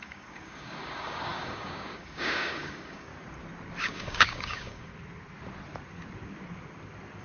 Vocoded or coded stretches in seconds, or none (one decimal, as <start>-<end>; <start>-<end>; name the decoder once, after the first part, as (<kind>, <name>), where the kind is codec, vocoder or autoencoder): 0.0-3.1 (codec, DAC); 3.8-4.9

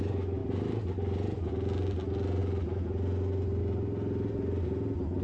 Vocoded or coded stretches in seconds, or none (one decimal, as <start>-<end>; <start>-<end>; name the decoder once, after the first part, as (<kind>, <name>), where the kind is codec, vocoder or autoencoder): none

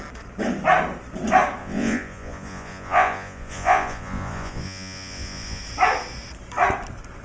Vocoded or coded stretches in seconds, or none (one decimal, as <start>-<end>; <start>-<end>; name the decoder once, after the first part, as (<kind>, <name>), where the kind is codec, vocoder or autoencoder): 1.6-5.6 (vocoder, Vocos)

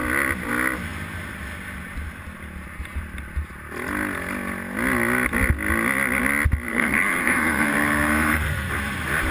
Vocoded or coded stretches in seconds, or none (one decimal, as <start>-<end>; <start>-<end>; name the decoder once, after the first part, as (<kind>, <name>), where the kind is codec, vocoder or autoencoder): 6.7-8.7 (codec, SNAC)